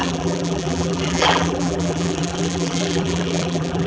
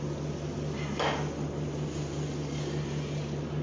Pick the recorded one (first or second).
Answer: second